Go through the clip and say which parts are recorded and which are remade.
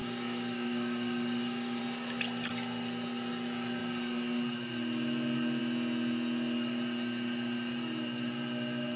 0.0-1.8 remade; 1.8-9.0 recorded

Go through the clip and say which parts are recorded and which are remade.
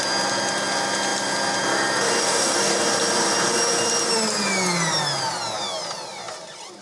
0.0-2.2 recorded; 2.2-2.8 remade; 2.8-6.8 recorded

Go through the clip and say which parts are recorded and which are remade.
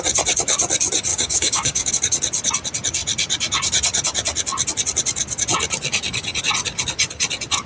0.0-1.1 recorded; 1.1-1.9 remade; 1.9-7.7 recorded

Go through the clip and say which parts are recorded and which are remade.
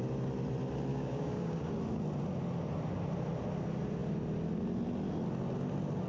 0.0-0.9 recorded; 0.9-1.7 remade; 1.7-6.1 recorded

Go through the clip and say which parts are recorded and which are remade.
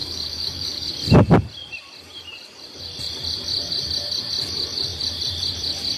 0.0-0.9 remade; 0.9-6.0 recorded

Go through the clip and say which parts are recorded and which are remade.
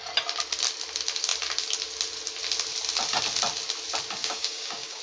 0.0-4.2 recorded; 4.2-5.0 remade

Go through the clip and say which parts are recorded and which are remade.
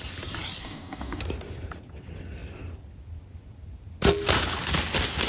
0.0-0.6 recorded; 0.6-1.2 remade; 1.2-5.3 recorded